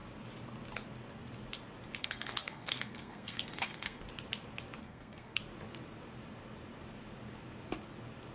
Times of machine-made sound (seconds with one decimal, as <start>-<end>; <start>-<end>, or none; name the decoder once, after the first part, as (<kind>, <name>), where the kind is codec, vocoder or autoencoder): 2.0-4.0 (codec, SNAC); 4.8-5.4